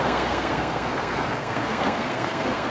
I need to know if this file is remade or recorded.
remade